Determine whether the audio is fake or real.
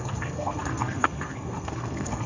fake